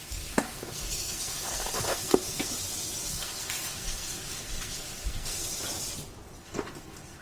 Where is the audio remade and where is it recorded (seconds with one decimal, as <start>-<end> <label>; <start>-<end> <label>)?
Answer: 0.0-2.5 remade; 2.5-3.1 recorded; 3.1-5.6 remade; 5.6-6.4 recorded; 6.4-7.2 remade